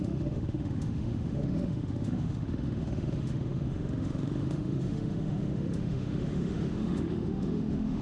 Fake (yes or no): yes